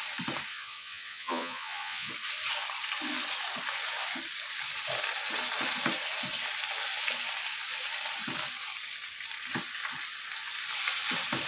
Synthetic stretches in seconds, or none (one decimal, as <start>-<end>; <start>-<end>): 0.5-2.1